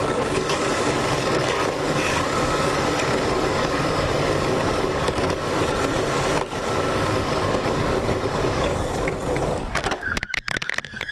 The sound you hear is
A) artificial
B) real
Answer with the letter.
A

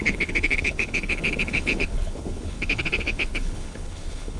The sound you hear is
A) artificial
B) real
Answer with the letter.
A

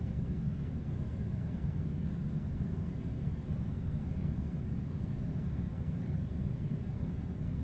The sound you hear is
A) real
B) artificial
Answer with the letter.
B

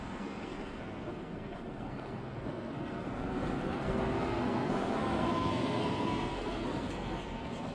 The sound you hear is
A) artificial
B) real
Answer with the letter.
A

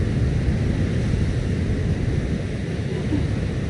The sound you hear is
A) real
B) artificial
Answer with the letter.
A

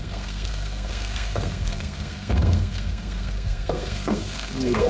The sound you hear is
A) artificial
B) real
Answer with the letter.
A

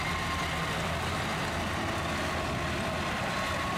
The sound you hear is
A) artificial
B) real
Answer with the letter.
B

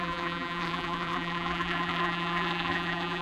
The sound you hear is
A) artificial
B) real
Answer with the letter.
A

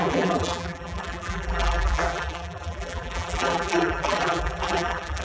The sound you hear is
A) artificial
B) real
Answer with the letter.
A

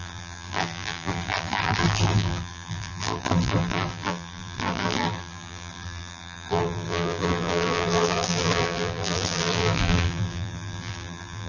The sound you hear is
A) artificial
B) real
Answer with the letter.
A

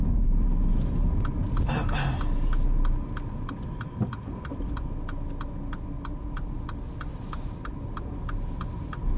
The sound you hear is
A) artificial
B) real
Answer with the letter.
B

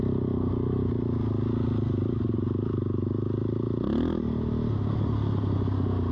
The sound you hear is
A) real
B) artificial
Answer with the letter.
A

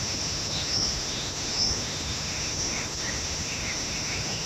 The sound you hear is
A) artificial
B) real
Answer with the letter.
A